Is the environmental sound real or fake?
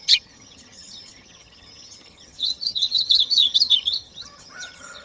fake